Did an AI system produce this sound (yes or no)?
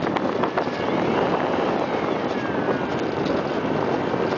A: no